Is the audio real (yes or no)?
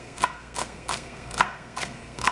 no